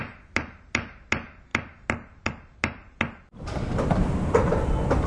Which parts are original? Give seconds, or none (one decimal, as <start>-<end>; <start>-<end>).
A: 0.0-5.1